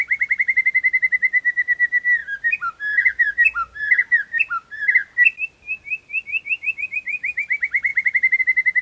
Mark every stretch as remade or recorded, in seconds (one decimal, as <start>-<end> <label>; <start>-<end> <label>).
0.0-7.9 recorded; 7.9-8.4 remade; 8.4-8.8 recorded